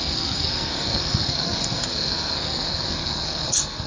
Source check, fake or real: fake